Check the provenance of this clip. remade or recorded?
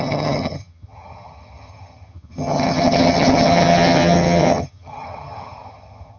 remade